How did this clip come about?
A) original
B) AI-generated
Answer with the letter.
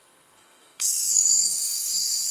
B